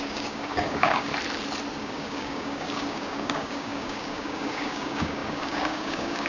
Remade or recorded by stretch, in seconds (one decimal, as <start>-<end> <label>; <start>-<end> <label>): 0.0-1.1 remade; 1.1-1.8 recorded; 1.8-6.3 remade